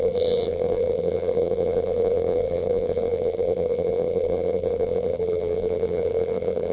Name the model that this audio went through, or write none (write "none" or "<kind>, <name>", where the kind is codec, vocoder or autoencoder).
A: vocoder, BigVGAN v2